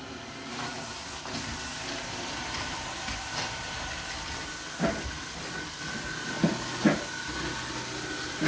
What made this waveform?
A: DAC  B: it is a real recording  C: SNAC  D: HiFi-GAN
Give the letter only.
B